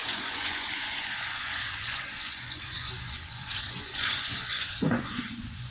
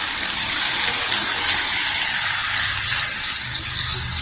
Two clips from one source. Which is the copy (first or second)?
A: first